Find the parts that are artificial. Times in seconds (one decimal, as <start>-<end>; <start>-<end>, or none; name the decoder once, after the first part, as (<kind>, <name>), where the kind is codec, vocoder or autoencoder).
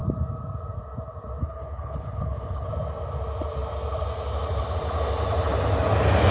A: 1.4-2.7 (codec, HILCodec)